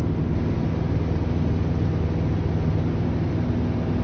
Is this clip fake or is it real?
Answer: real